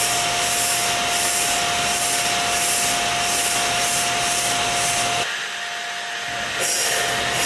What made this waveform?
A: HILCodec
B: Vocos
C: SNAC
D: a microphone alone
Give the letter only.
D